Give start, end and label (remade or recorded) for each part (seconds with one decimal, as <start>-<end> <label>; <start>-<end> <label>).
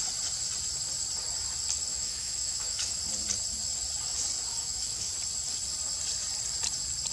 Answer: 0.0-1.9 recorded; 1.9-3.0 remade; 3.0-4.5 recorded; 4.5-5.1 remade; 5.1-7.1 recorded